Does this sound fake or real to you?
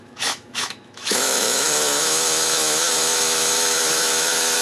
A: fake